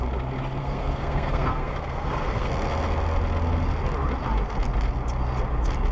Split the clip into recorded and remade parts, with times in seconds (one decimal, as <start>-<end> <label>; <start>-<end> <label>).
0.0-0.6 recorded; 0.6-2.5 remade; 2.5-5.9 recorded